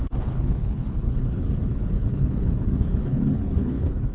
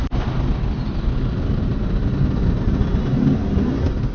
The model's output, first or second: first